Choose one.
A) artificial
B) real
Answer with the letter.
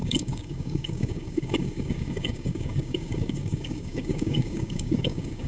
A